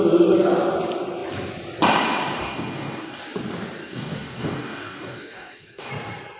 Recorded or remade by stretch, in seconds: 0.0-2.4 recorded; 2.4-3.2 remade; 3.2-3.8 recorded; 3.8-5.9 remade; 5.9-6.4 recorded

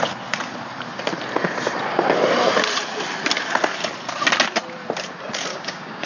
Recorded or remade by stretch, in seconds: 0.0-5.5 recorded; 5.5-6.1 remade

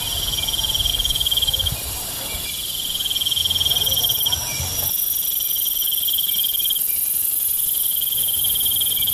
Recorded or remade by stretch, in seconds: 0.0-0.9 recorded; 0.9-1.7 remade; 1.7-9.1 recorded